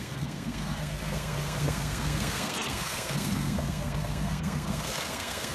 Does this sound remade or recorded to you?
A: remade